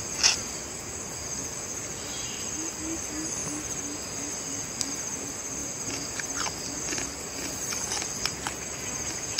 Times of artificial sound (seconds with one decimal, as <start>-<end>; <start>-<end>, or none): none